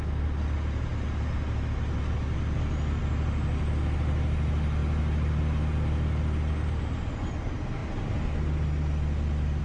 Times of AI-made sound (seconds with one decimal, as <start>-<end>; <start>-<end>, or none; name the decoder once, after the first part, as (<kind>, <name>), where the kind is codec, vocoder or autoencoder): none